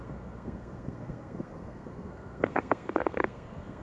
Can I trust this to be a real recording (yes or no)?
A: no